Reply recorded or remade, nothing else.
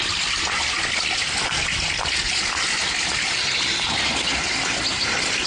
recorded